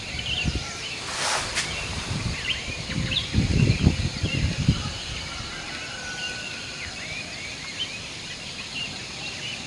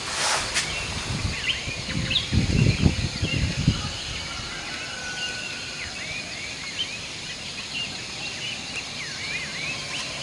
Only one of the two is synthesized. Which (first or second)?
first